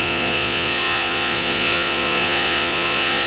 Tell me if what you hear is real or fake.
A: fake